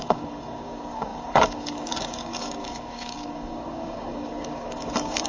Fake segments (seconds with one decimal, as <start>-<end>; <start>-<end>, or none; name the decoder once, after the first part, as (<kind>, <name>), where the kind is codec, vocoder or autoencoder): 0.0-5.3 (codec, DAC)